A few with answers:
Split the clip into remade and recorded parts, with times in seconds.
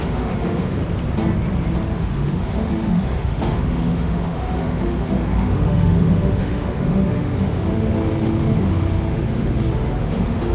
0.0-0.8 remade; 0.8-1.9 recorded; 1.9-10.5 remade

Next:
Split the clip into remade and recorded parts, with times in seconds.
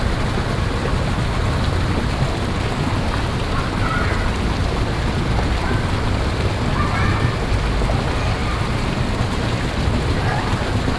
0.0-11.0 recorded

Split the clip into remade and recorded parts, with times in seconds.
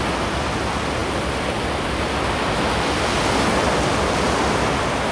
0.0-5.1 recorded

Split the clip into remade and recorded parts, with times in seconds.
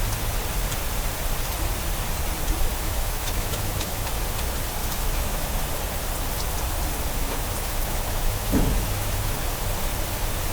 0.0-2.7 recorded; 2.7-4.1 remade; 4.1-4.8 recorded; 4.8-5.6 remade; 5.6-7.2 recorded; 7.2-9.4 remade; 9.4-10.5 recorded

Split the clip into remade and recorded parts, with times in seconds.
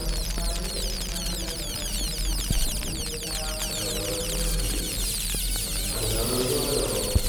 0.0-7.3 recorded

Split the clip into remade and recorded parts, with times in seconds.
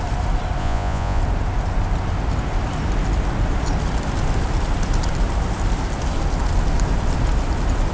0.0-0.6 recorded; 0.6-1.2 remade; 1.2-7.9 recorded